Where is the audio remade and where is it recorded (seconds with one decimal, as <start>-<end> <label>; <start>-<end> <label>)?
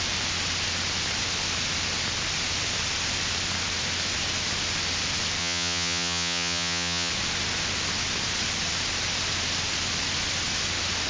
0.0-5.4 recorded; 5.4-7.1 remade; 7.1-11.1 recorded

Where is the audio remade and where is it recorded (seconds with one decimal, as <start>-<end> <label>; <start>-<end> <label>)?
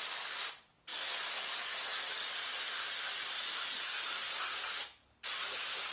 0.0-5.9 recorded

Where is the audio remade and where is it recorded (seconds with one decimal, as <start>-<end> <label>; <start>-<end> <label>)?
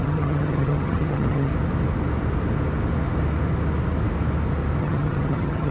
0.0-1.5 remade; 1.5-4.8 recorded; 4.8-5.7 remade